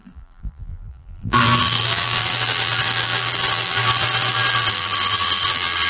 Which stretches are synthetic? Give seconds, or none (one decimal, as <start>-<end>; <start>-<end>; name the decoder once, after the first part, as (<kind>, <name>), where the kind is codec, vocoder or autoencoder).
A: 0.0-5.9 (vocoder, BigVGAN v2)